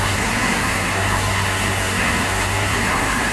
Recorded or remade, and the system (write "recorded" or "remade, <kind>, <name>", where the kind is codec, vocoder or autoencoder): remade, codec, SNAC